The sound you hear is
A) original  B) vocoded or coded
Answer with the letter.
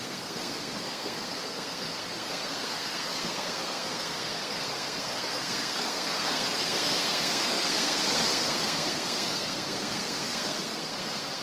B